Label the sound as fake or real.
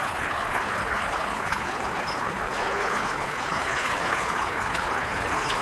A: fake